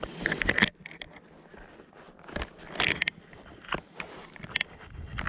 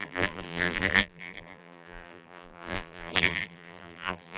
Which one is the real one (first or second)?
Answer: first